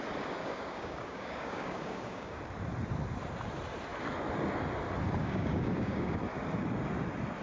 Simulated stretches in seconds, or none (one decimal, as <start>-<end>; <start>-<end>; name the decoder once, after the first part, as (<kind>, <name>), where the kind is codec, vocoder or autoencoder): 0.4-2.4 (codec, DAC); 5.2-6.2